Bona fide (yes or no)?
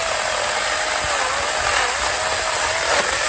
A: yes